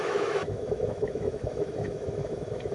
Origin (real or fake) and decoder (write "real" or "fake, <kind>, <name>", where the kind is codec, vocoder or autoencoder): fake, autoencoder, DAC-VAE